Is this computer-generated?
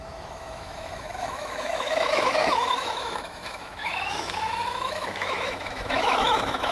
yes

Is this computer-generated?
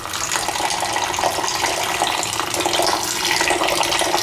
no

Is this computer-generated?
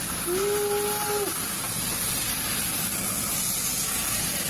no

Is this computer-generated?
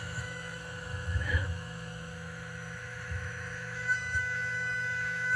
yes